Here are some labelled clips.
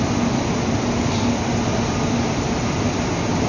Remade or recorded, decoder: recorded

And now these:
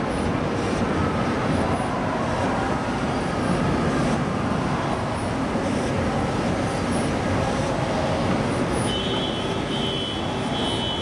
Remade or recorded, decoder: recorded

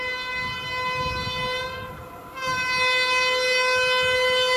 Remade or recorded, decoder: recorded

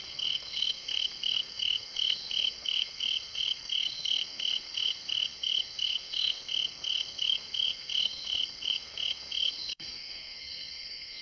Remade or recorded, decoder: remade, codec, SNAC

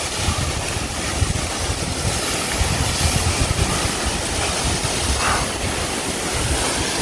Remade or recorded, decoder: recorded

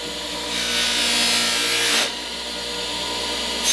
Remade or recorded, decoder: recorded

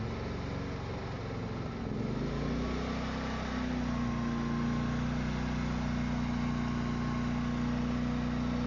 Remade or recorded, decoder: recorded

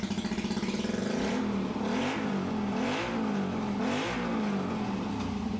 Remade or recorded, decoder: recorded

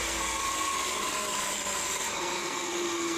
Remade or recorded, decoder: remade, codec, SNAC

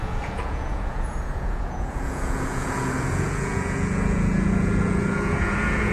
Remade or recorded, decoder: remade, vocoder, Vocos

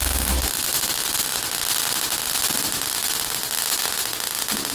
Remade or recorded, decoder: recorded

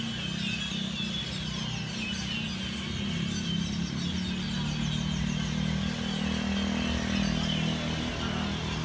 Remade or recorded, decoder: recorded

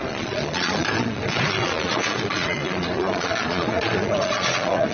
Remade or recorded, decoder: remade, vocoder, Vocos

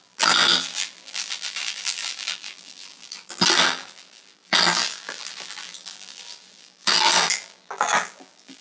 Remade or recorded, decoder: remade, vocoder, BigVGAN v2